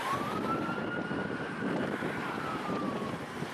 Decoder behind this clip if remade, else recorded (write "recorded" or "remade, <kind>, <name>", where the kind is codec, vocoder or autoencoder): remade, vocoder, BigVGAN v2